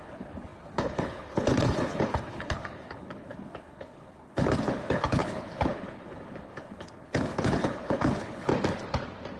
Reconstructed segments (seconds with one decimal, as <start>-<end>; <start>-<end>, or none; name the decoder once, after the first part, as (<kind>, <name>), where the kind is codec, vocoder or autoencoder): 0.0-8.5 (codec, HILCodec)

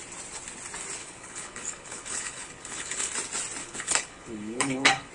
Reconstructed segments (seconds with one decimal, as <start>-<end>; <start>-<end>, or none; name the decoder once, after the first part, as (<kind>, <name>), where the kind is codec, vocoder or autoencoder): 1.0-3.1 (codec, HILCodec); 3.6-5.1

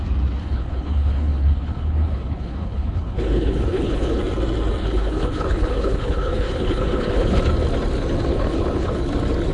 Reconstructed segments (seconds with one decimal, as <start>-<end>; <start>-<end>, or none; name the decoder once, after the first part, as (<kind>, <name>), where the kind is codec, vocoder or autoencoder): 0.4-4.2 (codec, HILCodec); 4.8-7.4; 8.3-9.0

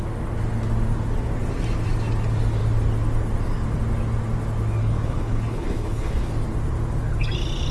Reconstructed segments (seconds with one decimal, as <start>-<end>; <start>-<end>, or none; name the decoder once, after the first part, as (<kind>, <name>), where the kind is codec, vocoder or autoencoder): 4.8-6.3 (codec, HILCodec)